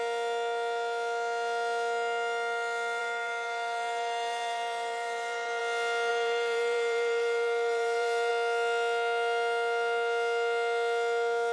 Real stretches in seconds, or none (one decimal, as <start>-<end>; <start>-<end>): 0.0-3.0; 5.6-6.1; 8.3-11.5